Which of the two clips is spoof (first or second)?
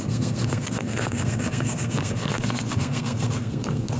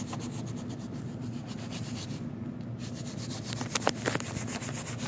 first